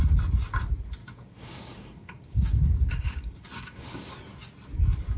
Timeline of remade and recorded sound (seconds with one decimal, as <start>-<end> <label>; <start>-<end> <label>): 0.0-1.0 recorded; 1.0-4.1 remade; 4.1-5.2 recorded